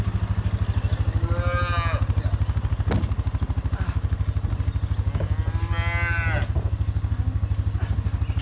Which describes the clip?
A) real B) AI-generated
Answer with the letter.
A